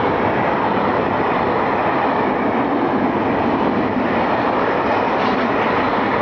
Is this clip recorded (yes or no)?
yes